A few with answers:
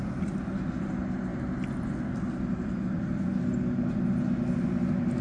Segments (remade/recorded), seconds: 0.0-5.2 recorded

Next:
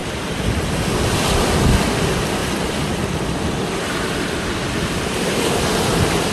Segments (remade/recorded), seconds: 0.0-6.3 recorded